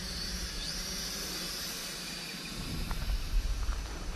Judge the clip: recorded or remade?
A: remade